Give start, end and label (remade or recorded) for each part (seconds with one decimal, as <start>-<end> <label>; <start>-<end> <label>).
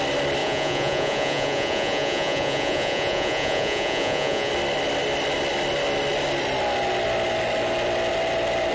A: 0.0-0.4 recorded; 0.4-4.5 remade; 4.5-8.7 recorded